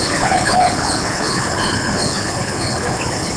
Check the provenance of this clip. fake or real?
fake